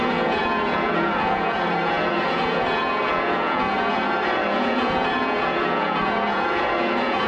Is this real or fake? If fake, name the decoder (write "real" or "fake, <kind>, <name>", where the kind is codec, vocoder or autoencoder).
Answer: fake, vocoder, Vocos